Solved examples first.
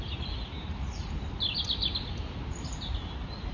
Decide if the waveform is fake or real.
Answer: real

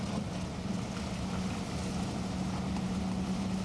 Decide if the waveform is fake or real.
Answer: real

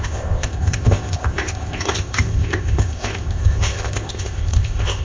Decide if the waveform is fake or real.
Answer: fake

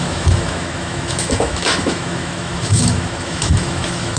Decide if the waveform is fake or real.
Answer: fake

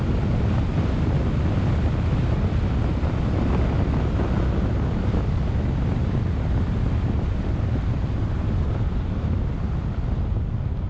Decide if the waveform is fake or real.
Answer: real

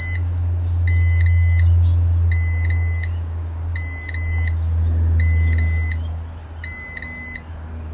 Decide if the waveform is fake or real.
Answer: real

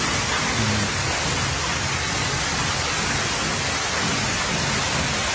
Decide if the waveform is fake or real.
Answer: real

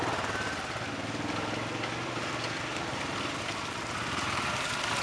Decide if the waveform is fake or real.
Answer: real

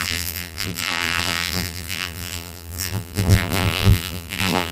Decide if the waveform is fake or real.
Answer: fake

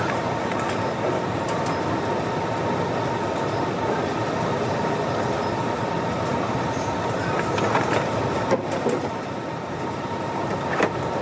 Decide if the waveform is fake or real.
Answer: real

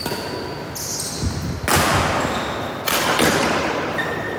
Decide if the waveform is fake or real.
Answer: real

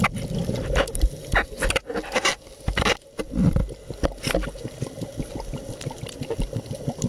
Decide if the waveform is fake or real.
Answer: real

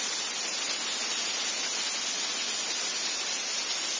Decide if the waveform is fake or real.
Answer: real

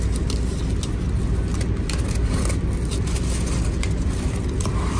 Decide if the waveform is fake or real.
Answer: real